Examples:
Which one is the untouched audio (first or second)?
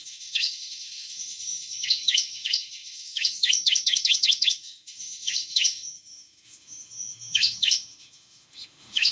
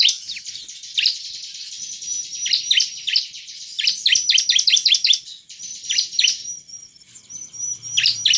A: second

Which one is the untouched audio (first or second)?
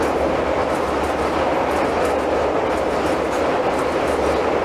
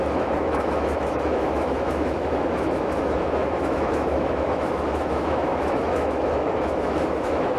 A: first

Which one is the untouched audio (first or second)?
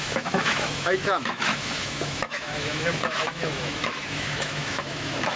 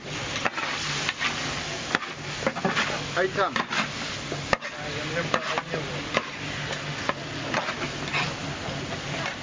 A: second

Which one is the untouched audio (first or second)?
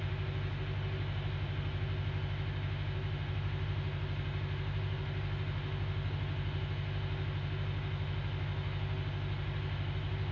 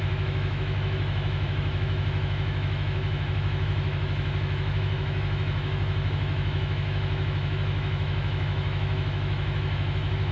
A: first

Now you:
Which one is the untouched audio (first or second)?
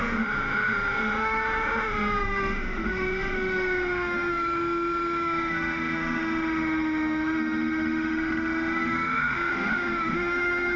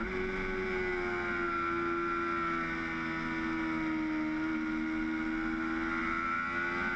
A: second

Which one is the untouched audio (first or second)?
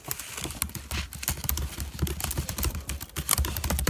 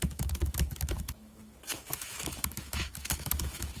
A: first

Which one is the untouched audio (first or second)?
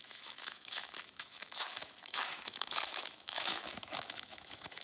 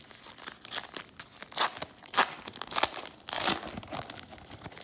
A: second